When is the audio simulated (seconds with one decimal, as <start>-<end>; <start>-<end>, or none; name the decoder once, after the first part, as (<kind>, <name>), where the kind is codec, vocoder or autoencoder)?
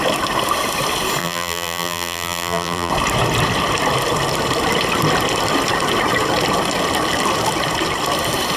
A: 1.2-2.9 (vocoder, BigVGAN v2)